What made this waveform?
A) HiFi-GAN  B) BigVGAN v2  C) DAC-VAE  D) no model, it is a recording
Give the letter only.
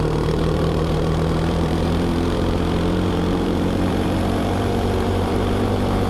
B